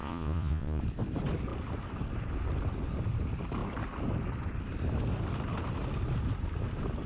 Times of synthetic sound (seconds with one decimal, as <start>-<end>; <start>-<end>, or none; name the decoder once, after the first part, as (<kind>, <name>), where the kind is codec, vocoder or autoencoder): 0.0-0.8 (vocoder, Vocos)